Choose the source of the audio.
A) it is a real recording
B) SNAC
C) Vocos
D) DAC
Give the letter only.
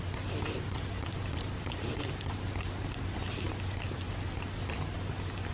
A